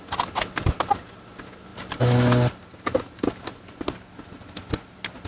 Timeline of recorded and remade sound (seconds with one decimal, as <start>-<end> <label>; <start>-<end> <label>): 0.0-5.3 recorded